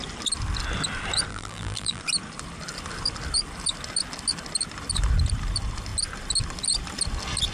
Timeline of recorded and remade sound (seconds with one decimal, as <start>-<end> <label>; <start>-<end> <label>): 0.0-1.3 recorded; 1.3-2.0 remade; 2.0-7.5 recorded